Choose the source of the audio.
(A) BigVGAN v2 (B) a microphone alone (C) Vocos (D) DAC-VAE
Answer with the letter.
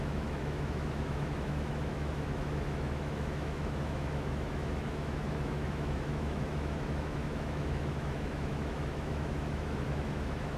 D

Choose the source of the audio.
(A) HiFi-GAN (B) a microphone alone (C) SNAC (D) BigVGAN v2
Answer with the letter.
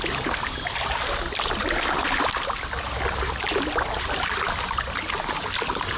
B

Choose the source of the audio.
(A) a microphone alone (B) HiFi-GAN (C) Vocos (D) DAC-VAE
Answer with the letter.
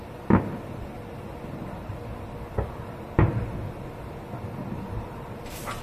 A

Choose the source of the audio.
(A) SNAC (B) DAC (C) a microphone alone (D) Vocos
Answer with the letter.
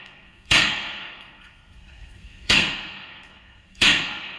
A